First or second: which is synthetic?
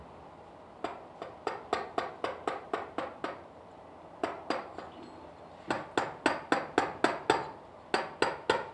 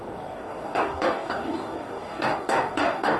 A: second